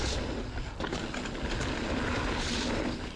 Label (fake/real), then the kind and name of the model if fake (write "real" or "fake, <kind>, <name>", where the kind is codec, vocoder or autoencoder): real